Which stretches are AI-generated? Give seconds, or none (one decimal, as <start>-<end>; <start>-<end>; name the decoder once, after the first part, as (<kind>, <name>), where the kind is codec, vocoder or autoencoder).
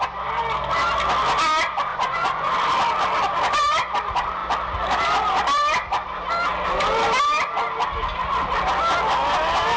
1.9-2.5 (vocoder, Vocos)